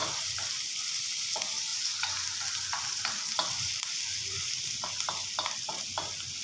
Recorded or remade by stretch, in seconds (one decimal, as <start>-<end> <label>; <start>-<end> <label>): 0.0-1.2 remade; 1.2-1.7 recorded; 1.7-4.6 remade; 4.6-6.4 recorded